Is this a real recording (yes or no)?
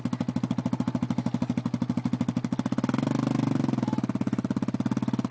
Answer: yes